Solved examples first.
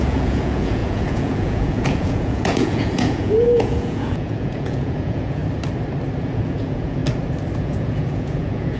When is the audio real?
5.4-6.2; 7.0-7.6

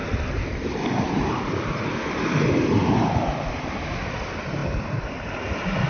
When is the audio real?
0.0-5.9